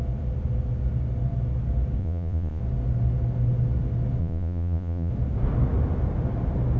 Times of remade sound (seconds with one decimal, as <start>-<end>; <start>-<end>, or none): 2.0-2.6; 4.2-5.1